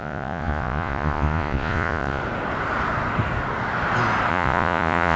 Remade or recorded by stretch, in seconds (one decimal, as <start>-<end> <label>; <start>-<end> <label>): 0.0-2.2 remade; 2.2-4.3 recorded; 4.3-5.2 remade